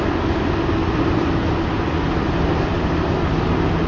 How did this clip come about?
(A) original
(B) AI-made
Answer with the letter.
A